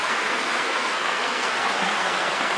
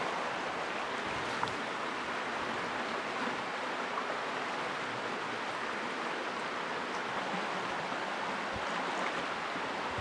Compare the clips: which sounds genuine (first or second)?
second